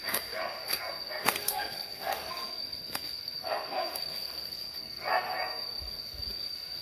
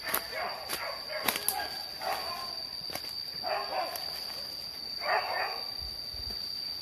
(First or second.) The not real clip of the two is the first